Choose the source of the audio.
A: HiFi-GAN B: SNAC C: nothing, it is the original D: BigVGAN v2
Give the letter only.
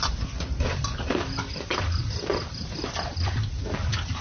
D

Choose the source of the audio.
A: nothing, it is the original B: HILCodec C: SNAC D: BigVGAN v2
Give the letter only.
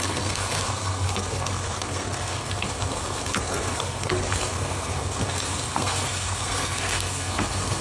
C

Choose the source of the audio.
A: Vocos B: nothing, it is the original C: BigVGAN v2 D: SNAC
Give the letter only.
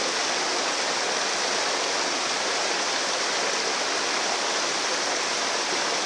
B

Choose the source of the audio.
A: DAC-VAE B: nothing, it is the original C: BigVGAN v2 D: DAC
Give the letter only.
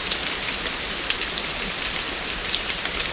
B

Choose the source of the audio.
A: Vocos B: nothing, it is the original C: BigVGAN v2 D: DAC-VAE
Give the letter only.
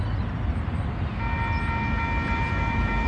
B